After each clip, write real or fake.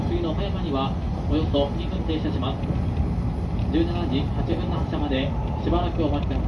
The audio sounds real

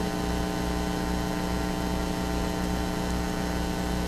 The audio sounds real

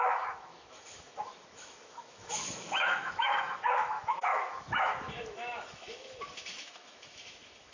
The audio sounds fake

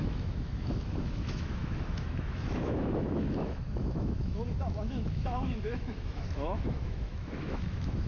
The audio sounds fake